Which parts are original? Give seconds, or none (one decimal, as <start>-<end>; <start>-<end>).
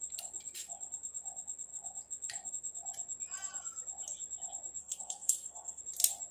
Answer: 0.0-4.8; 5.8-6.3